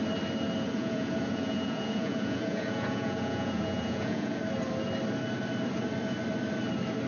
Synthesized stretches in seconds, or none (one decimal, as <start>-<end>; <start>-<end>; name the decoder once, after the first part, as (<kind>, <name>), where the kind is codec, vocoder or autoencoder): 0.8-4.4 (vocoder, Vocos)